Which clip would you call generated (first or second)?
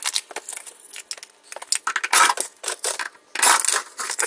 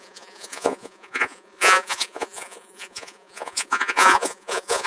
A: second